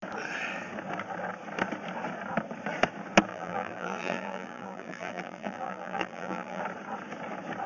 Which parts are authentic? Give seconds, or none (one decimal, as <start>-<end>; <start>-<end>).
0.0-3.3; 6.6-7.7